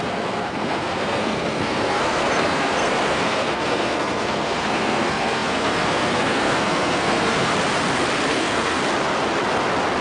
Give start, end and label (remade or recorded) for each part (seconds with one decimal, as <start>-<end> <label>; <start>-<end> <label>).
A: 0.0-7.5 remade; 7.5-8.3 recorded; 8.3-8.8 remade; 8.8-10.0 recorded